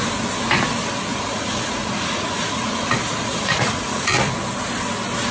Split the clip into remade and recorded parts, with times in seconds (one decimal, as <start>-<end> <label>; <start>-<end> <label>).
0.0-1.1 recorded; 1.1-4.3 remade; 4.3-5.3 recorded